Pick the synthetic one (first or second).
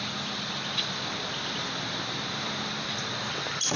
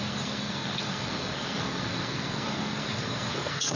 second